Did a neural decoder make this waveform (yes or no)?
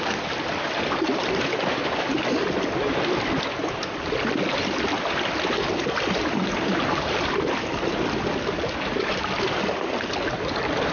no